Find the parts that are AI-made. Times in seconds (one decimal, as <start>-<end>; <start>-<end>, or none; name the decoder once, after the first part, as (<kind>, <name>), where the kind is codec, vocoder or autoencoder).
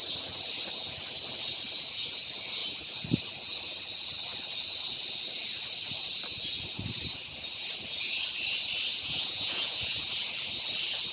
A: 8.9-10.1 (vocoder, Vocos)